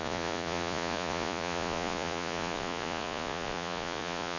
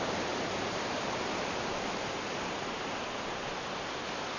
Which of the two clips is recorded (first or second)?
second